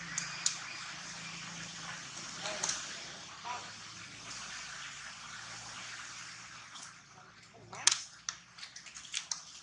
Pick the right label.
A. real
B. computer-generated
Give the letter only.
A